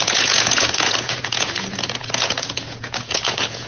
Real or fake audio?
fake